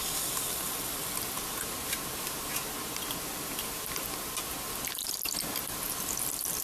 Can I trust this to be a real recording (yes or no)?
yes